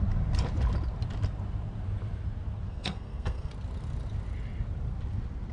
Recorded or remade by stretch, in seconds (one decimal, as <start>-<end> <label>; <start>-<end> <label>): 0.0-2.7 recorded; 2.7-3.5 remade; 3.5-5.5 recorded